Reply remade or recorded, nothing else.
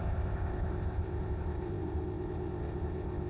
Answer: remade